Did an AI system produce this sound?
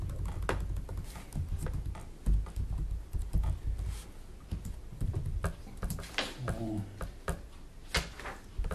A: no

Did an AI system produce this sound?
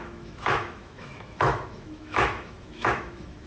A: yes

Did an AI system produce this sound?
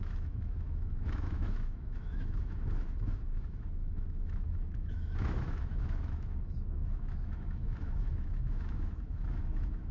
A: yes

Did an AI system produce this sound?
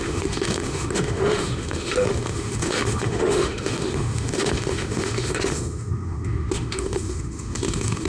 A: yes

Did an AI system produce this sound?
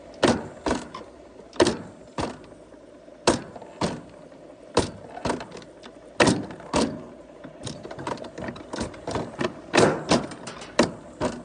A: no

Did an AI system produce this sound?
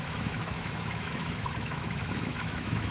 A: yes